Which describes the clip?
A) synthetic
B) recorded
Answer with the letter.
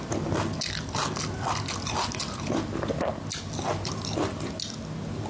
B